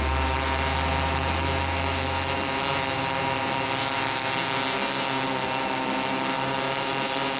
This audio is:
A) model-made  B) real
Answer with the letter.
B